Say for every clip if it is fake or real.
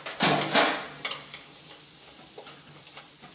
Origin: real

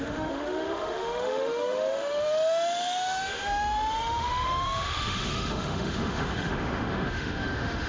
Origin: fake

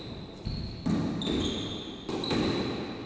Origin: real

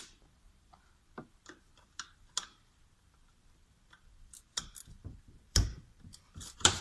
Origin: fake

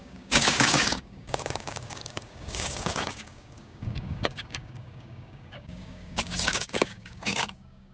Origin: fake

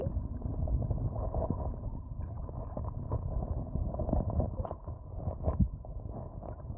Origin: real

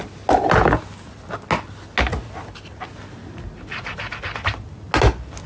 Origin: real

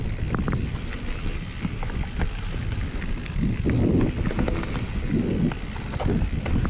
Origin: real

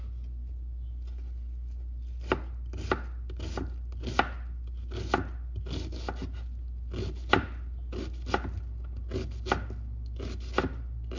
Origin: real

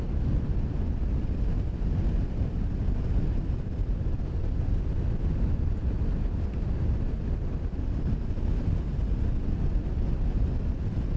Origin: real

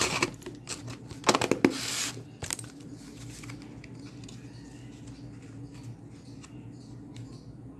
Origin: real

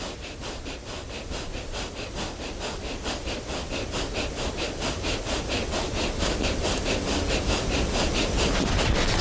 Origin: real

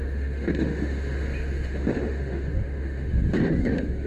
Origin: fake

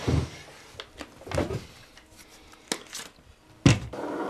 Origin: real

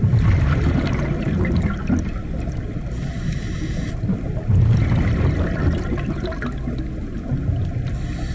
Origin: real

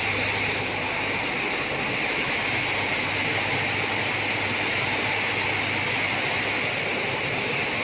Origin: real